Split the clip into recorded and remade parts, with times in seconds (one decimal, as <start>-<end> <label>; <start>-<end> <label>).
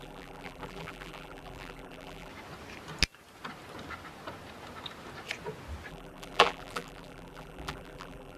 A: 0.0-2.3 remade; 2.3-5.9 recorded; 5.9-8.4 remade